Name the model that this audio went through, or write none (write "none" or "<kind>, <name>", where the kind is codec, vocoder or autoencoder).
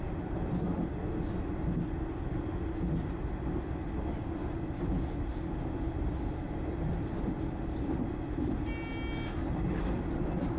none